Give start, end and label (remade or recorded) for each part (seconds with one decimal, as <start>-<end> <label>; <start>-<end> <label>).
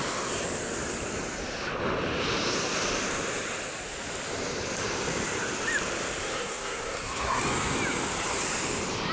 0.0-6.2 recorded; 6.2-7.4 remade; 7.4-9.1 recorded